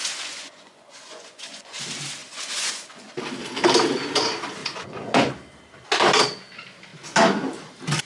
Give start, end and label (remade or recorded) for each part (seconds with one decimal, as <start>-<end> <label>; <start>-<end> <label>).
0.0-1.8 remade; 1.8-2.2 recorded; 2.2-3.1 remade; 3.1-4.6 recorded; 4.6-5.3 remade; 5.3-8.1 recorded